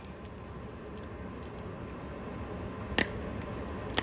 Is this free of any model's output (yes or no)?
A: yes